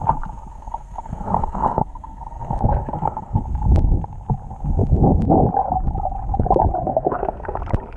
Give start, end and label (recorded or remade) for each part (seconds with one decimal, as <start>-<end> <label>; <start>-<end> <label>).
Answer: 0.0-0.5 recorded; 0.5-3.4 remade; 3.4-6.9 recorded; 6.9-7.6 remade; 7.6-8.0 recorded